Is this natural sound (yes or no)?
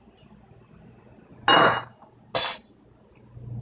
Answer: yes